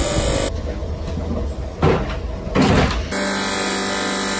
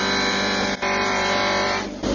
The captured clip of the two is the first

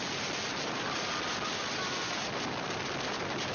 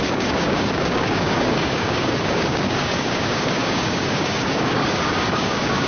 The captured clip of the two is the first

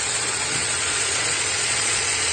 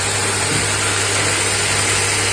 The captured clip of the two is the second